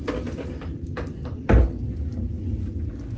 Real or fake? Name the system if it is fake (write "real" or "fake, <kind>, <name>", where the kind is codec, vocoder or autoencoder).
real